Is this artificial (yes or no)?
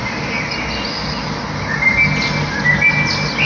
no